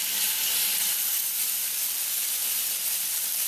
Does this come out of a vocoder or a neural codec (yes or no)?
no